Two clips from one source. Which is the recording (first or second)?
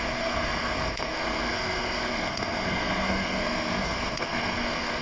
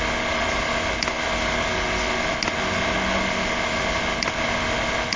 second